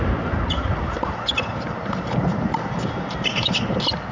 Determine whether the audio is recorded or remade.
recorded